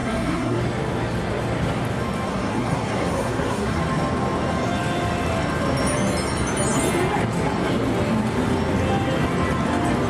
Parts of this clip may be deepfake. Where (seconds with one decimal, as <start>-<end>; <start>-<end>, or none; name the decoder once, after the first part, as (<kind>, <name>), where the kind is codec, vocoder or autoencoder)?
0.0-0.6 (codec, SNAC); 2.3-3.8